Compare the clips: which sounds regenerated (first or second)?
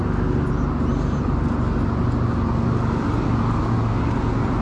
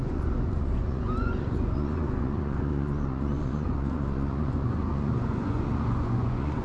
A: second